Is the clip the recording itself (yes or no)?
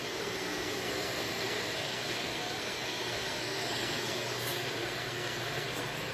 no